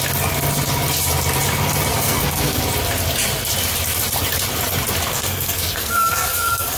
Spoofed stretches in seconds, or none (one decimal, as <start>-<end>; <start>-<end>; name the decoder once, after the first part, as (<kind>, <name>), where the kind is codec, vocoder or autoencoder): 1.9-2.6 (codec, SNAC); 5.1-6.8